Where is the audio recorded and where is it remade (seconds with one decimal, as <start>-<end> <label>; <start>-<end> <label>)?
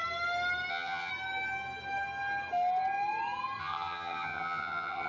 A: 0.0-0.7 recorded; 0.7-1.1 remade; 1.1-3.6 recorded; 3.6-5.1 remade